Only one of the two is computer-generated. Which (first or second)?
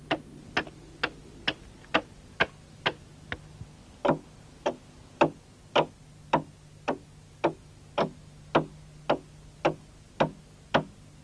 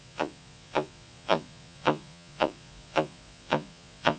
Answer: second